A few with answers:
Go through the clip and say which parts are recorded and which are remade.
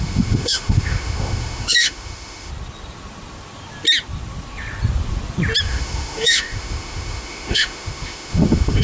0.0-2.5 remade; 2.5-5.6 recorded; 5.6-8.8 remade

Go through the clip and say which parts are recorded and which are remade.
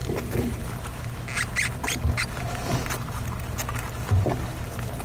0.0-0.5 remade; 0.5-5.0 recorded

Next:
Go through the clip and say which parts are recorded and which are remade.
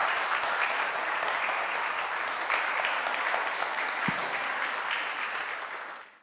0.0-3.7 remade; 3.7-4.2 recorded; 4.2-5.4 remade; 5.4-6.2 recorded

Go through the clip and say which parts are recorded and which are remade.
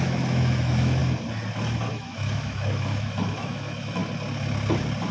0.0-1.0 remade; 1.0-1.9 recorded; 1.9-4.0 remade; 4.0-5.1 recorded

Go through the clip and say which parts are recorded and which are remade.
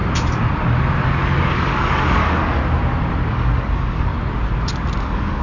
0.0-1.5 recorded; 1.5-2.6 remade; 2.6-3.3 recorded; 3.3-4.1 remade; 4.1-5.0 recorded; 5.0-5.4 remade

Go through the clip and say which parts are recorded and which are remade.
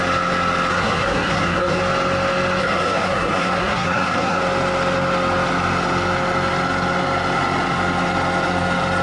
0.0-0.7 recorded; 0.7-1.8 remade; 1.8-2.6 recorded; 2.6-4.4 remade; 4.4-9.0 recorded